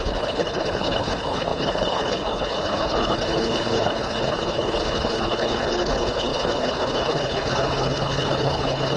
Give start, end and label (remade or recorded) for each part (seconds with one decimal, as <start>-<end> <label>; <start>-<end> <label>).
0.0-9.0 remade